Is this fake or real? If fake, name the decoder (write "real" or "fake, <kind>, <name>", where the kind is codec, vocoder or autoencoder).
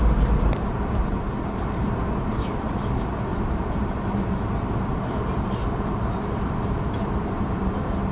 fake, vocoder, BigVGAN v2